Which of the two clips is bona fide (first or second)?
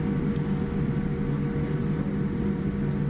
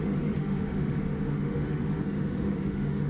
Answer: first